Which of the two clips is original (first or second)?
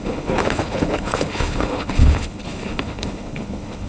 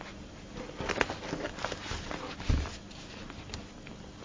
second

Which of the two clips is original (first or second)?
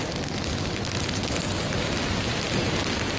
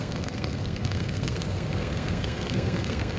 first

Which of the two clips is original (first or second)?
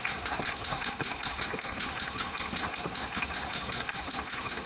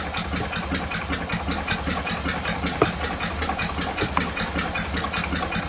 second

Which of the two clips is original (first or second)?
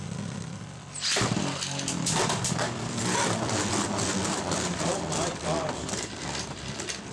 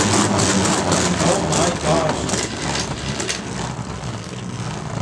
second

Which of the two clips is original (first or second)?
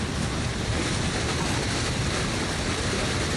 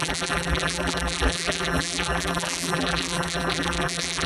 first